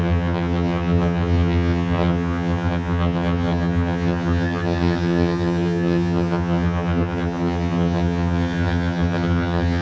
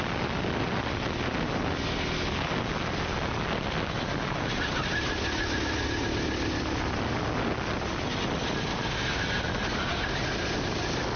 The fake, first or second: first